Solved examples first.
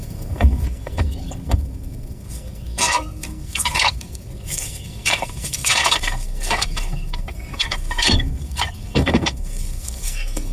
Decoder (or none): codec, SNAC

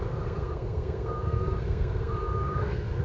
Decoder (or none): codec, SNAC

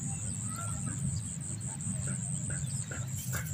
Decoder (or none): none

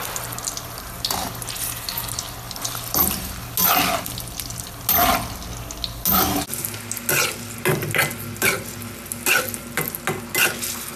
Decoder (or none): none